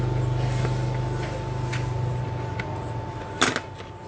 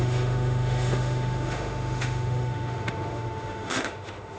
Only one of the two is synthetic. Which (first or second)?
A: second